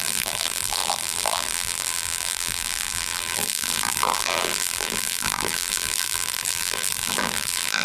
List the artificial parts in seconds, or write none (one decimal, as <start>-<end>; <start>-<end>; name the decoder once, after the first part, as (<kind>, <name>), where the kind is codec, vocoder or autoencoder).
0.0-7.8 (vocoder, BigVGAN v2)